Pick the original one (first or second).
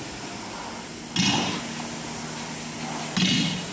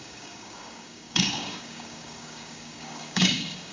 first